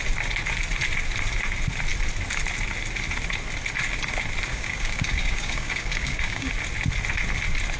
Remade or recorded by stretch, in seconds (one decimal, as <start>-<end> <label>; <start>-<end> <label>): 0.0-4.5 recorded; 4.5-6.5 remade; 6.5-7.8 recorded